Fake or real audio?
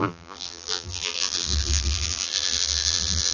fake